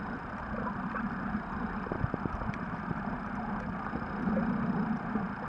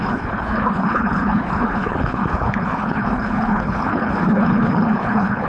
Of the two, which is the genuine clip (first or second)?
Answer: first